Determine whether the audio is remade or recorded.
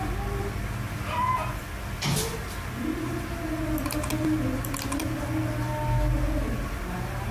recorded